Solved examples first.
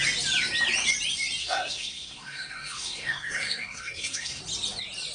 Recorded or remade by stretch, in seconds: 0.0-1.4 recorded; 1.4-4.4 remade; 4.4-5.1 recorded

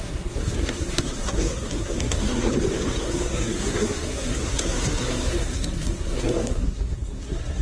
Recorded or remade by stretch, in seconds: 0.0-2.5 remade; 2.5-3.0 recorded; 3.0-7.6 remade

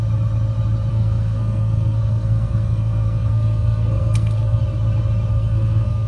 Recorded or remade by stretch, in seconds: 0.0-0.9 recorded; 0.9-4.6 remade; 4.6-5.3 recorded; 5.3-6.1 remade